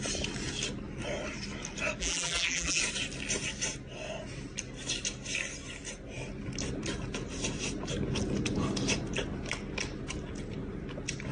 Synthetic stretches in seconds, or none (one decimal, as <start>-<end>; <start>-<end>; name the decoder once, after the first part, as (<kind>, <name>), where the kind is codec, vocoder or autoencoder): 2.0-2.8 (vocoder, BigVGAN v2)